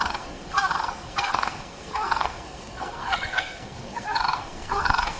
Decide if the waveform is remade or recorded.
remade